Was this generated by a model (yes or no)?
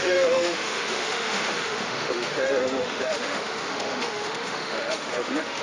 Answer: yes